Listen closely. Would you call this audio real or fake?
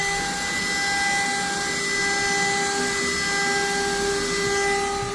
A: real